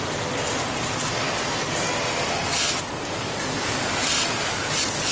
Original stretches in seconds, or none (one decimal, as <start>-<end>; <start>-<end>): 0.0-5.1